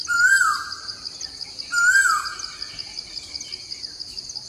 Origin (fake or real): real